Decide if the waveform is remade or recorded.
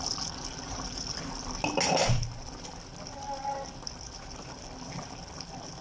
recorded